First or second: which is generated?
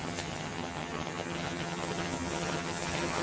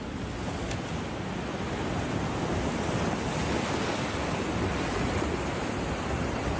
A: first